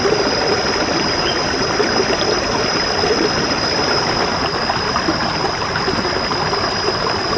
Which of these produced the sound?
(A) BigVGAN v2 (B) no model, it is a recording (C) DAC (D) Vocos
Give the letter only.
B